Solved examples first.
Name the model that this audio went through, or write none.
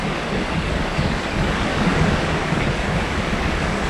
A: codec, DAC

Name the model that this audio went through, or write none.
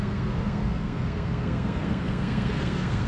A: codec, SNAC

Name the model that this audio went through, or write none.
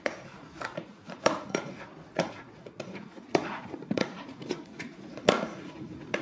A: vocoder, Vocos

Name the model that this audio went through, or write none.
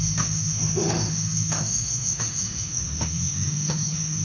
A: autoencoder, DAC-VAE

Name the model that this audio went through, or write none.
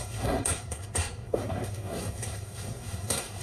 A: codec, SNAC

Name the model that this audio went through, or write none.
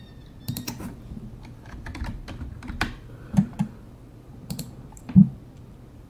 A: vocoder, BigVGAN v2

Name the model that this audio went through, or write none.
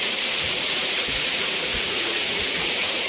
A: vocoder, Vocos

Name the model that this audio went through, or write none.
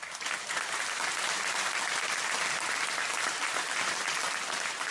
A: none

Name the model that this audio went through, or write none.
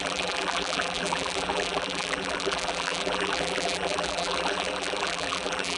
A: vocoder, BigVGAN v2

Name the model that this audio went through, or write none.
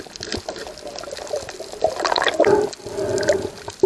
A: none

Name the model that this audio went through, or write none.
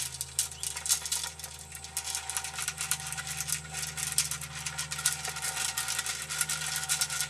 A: none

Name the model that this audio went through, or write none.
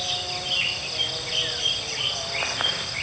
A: none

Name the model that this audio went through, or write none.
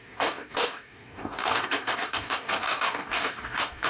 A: codec, DAC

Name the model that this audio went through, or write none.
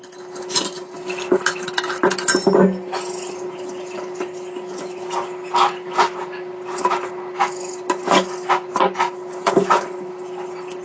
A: none